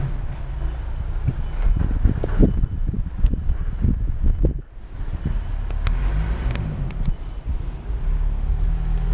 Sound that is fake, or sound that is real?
real